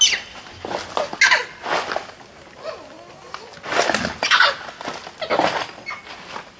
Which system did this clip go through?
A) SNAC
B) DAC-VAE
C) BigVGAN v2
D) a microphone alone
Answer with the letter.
D